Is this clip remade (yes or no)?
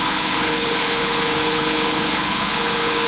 yes